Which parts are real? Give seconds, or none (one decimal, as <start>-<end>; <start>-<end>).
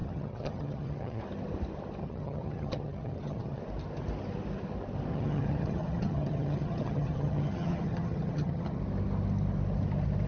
1.2-2.0; 3.6-5.1; 8.8-10.3